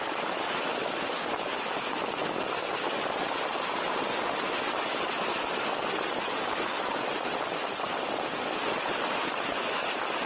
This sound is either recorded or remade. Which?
recorded